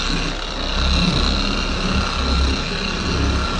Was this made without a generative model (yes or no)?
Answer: yes